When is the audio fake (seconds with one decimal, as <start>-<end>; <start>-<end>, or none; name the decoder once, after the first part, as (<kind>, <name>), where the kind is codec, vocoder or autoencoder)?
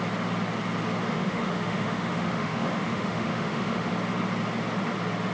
1.1-3.9 (autoencoder, DAC-VAE)